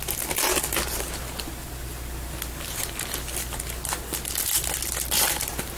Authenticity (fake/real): real